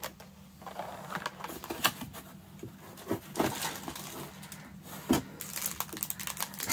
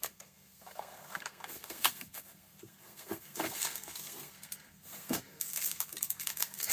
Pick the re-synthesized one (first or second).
second